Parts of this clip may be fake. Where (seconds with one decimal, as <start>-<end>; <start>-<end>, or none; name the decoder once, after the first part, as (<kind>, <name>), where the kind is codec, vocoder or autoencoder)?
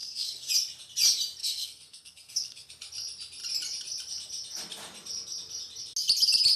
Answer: 0.0-0.5 (codec, SNAC); 1.4-2.7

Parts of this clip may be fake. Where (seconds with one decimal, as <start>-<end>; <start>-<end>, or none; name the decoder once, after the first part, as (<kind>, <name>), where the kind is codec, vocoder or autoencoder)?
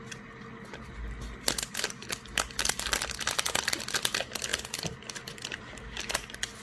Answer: 4.5-5.6 (vocoder, BigVGAN v2)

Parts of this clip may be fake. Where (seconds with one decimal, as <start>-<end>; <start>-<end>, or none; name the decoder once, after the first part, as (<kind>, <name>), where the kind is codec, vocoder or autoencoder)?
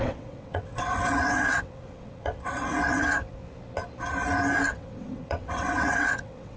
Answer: 0.0-3.4 (vocoder, WaveNeXt); 4.7-6.6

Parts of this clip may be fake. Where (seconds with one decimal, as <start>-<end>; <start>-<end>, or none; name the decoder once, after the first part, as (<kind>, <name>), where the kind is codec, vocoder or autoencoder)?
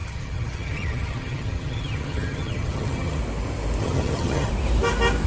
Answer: 0.0-3.2 (vocoder, HiFi-GAN); 3.8-4.5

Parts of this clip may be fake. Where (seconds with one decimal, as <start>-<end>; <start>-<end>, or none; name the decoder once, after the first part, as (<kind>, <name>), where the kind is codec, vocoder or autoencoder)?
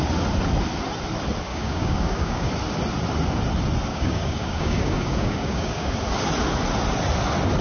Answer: 1.5-2.5 (codec, DAC); 3.9-5.9